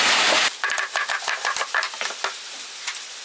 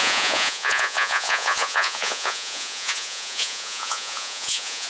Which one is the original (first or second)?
first